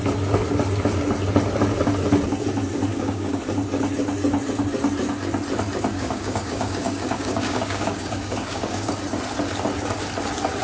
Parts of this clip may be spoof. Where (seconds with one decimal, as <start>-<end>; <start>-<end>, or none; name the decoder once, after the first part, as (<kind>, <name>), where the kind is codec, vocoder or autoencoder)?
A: 2.9-3.4 (codec, DAC); 5.9-8.9

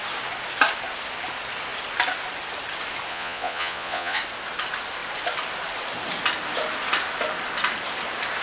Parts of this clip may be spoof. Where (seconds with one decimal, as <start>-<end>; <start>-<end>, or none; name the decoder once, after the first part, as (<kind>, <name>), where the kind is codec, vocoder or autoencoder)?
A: 3.1-4.2 (vocoder, Vocos)

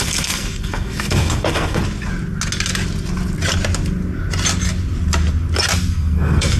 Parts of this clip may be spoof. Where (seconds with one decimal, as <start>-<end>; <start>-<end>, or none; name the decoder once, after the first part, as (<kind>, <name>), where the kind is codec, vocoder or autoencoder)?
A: 0.0-1.8 (codec, SNAC); 5.8-6.6

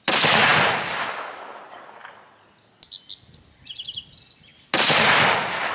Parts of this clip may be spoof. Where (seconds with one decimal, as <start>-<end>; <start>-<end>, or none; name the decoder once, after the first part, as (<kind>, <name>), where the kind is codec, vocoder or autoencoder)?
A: none

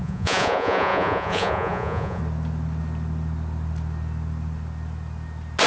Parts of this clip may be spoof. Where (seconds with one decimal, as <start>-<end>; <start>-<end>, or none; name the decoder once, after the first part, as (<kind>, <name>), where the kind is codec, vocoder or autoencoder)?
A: 0.0-2.2 (vocoder, Vocos)

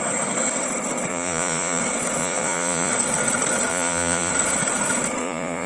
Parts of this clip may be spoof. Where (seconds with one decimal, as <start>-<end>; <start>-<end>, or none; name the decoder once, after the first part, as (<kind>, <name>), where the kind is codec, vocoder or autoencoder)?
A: 1.1-1.8 (vocoder, Vocos); 2.2-2.9; 3.7-4.3; 5.2-5.7

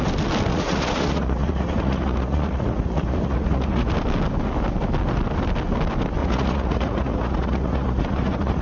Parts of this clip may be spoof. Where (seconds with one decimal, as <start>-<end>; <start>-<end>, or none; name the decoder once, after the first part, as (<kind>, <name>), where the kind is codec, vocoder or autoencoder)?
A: 0.5-3.9 (vocoder, Vocos); 6.2-8.6